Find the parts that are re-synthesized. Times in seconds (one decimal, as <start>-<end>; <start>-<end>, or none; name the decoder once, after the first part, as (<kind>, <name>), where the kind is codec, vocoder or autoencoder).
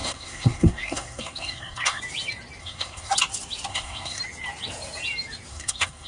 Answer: 0.0-2.0 (codec, SNAC); 2.6-3.1; 3.7-4.2; 5.5-6.1